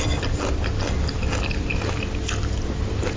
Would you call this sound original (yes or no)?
yes